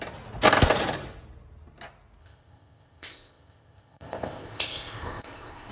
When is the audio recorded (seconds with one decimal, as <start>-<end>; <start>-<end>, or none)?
0.0-2.2